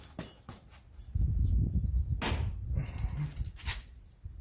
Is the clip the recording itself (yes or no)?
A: yes